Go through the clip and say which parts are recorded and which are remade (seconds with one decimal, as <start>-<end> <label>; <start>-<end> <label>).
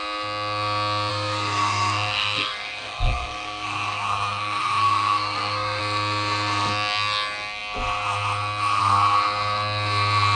0.0-1.1 recorded; 1.1-5.8 remade; 5.8-10.3 recorded